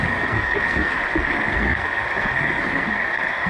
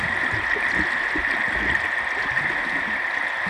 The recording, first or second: second